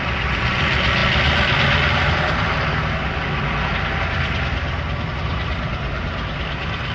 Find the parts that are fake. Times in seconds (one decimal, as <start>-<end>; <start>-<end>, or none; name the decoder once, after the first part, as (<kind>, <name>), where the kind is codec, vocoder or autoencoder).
none